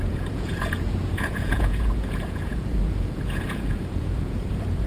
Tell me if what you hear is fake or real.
fake